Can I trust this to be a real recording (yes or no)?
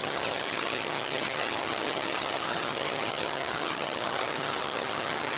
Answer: no